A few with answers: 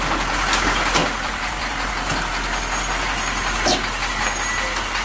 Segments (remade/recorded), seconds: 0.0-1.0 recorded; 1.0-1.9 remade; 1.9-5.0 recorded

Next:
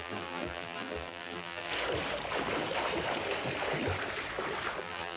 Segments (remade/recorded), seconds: 0.0-1.7 remade; 1.7-4.8 recorded; 4.8-5.2 remade